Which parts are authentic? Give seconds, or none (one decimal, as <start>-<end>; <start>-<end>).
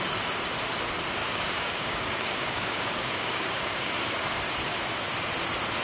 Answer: 0.0-1.2; 4.4-5.8